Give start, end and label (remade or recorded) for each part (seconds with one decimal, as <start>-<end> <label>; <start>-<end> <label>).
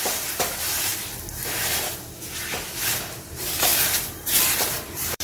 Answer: 0.0-0.9 remade; 0.9-3.2 recorded; 3.2-3.7 remade; 3.7-4.7 recorded; 4.7-5.2 remade